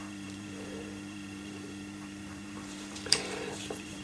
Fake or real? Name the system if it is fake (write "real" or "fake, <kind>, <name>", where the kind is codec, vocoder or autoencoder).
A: fake, vocoder, BigVGAN v2